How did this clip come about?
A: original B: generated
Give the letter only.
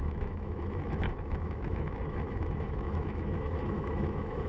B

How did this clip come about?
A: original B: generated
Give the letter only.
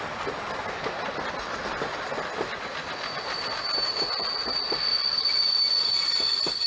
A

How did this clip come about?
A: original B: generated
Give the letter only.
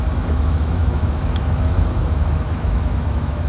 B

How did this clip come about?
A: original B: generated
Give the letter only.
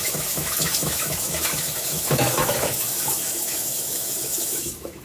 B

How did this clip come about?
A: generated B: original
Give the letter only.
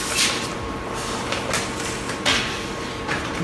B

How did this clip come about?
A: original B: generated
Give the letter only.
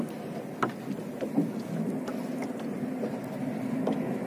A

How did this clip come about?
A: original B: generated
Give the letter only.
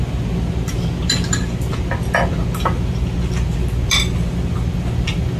A